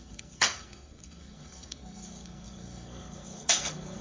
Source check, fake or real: fake